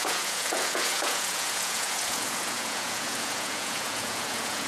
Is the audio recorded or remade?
remade